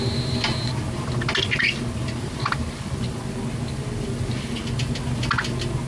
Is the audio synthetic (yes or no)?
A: no